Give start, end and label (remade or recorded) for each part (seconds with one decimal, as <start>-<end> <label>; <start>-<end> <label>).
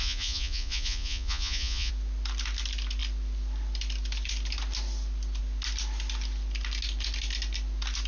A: 0.0-1.9 remade; 1.9-8.1 recorded